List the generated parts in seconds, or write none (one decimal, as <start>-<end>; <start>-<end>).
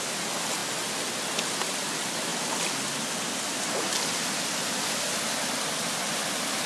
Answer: none